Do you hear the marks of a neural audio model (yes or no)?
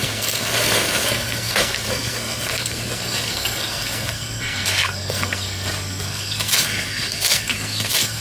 yes